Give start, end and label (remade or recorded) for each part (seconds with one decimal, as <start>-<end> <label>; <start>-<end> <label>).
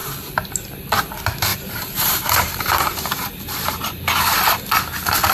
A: 0.0-1.5 recorded; 1.5-4.0 remade; 4.0-5.3 recorded